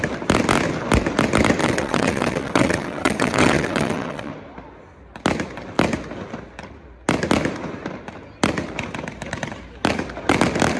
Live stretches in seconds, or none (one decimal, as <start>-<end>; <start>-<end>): 0.0-1.6; 4.3-10.8